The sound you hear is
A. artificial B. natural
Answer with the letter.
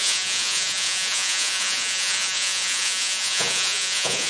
A